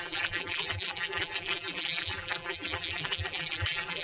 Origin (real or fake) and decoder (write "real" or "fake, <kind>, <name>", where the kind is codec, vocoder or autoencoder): fake, vocoder, BigVGAN v2